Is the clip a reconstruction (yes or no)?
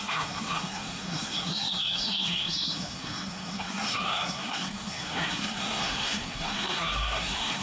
yes